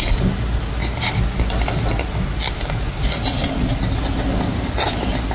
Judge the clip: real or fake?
real